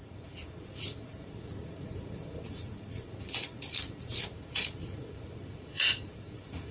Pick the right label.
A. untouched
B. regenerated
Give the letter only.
B